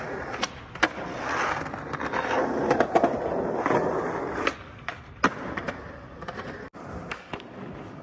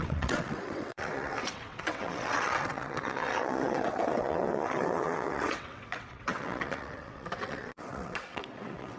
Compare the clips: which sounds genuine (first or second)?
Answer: first